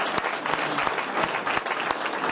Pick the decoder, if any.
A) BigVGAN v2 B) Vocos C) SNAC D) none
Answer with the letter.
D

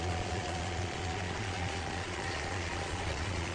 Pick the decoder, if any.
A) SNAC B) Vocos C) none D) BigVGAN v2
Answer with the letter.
B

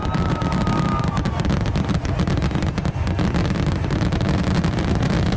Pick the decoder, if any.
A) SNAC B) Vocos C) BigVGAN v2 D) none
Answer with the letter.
D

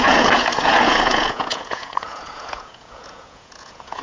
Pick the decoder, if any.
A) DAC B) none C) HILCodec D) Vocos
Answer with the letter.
D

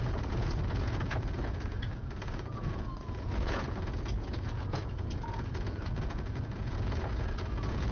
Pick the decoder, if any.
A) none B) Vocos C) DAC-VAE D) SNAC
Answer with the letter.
B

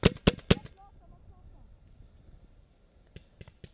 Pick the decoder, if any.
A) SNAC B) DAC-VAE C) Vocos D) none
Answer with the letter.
D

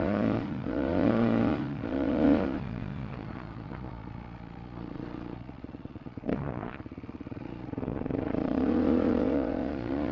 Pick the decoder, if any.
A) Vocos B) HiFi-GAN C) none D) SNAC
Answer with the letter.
A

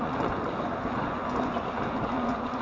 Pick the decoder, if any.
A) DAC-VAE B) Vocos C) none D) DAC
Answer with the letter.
B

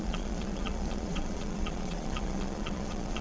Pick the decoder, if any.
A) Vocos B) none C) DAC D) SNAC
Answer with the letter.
A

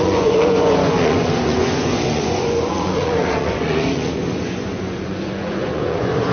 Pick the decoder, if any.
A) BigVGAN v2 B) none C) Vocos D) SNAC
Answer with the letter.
C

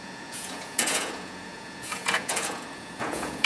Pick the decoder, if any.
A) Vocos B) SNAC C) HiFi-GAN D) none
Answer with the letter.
A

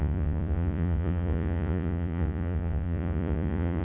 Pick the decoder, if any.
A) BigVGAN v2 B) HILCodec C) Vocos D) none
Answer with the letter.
C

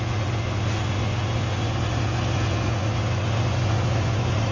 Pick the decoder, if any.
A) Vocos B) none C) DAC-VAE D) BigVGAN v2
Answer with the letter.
A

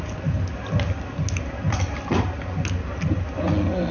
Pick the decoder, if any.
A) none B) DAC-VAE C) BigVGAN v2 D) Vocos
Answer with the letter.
A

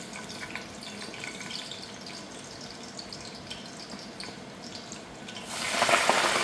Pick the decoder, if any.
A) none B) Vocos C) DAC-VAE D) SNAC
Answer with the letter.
A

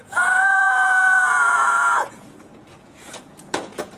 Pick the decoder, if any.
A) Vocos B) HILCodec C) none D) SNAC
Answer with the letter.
A